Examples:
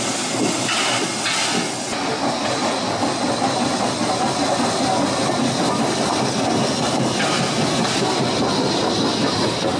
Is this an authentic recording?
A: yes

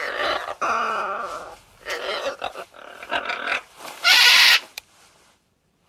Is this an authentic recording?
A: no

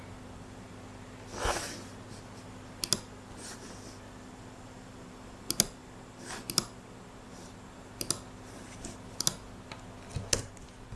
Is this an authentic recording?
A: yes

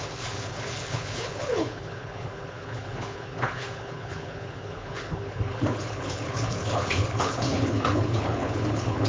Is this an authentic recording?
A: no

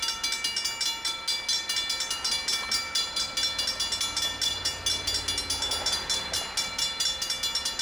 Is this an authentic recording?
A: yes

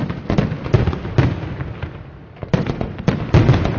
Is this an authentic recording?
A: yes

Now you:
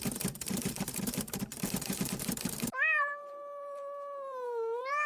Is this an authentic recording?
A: no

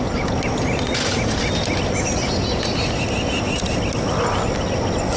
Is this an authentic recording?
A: yes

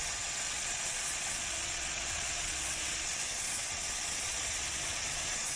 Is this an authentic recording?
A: no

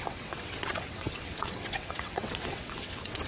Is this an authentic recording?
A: no